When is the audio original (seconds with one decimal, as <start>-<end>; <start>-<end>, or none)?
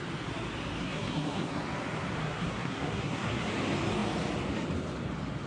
0.0-0.8; 1.6-2.2; 3.5-5.5